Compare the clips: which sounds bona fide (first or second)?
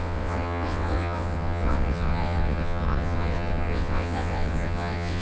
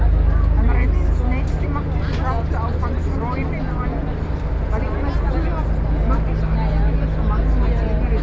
second